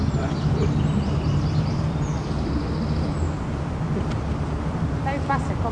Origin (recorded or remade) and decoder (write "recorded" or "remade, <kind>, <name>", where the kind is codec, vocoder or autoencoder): recorded